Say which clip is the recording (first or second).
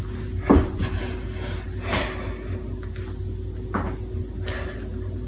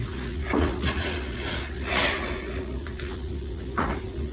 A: first